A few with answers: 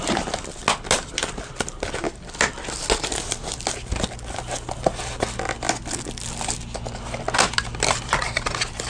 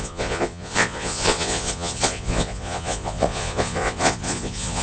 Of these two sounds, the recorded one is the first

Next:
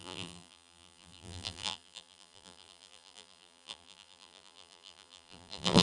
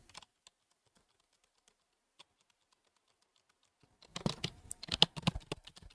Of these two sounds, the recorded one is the second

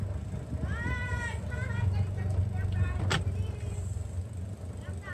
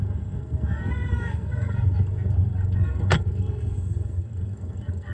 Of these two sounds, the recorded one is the first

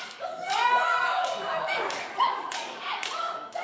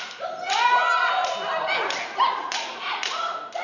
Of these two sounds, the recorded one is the second